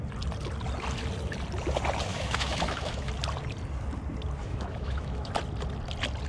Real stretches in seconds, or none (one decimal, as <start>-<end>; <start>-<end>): 0.0-2.1; 3.1-4.4; 5.3-6.3